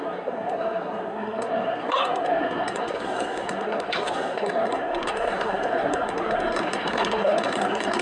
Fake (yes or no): yes